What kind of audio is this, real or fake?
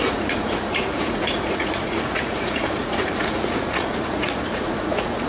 fake